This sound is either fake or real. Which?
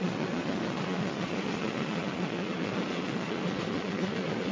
fake